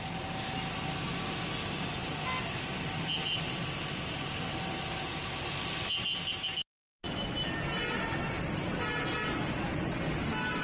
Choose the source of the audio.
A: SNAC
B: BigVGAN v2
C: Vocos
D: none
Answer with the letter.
D